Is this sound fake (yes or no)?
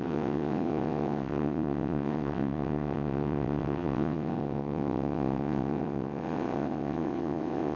yes